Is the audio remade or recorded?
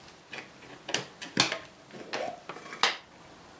recorded